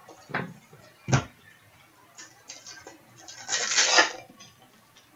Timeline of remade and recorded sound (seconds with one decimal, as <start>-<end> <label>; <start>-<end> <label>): 0.0-5.2 recorded

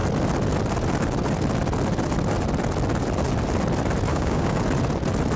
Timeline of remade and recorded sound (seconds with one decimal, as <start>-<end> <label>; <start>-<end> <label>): 0.0-4.1 recorded; 4.1-4.6 remade; 4.6-5.4 recorded

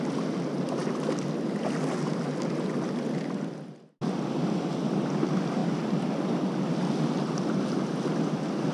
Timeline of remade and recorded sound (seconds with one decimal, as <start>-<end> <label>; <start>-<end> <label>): 0.0-8.7 recorded

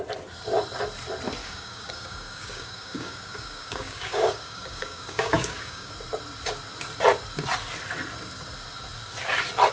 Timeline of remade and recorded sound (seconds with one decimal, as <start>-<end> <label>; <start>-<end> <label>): 0.0-1.4 recorded; 1.4-5.9 remade; 5.9-9.7 recorded

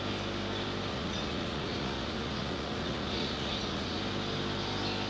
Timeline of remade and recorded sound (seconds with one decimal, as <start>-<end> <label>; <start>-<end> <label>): 0.0-0.9 recorded; 0.9-4.0 remade; 4.0-5.1 recorded

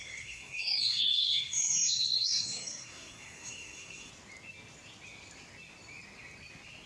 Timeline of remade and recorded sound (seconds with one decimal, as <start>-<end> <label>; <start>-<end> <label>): 0.0-4.1 remade; 4.1-6.9 recorded

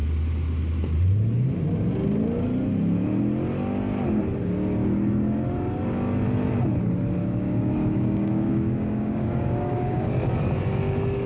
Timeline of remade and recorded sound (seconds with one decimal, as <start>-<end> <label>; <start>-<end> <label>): 0.0-7.2 recorded; 7.2-10.1 remade; 10.1-11.3 recorded